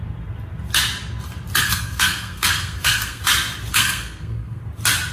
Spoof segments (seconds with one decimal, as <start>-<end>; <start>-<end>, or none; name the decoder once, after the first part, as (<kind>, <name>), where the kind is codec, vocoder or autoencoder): 1.6-3.2 (codec, SNAC); 3.7-4.6